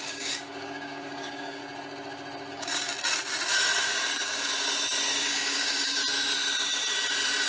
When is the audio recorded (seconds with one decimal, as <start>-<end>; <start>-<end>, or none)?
1.6-2.5; 2.9-3.8; 4.5-5.1; 6.0-7.5